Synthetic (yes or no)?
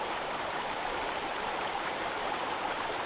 yes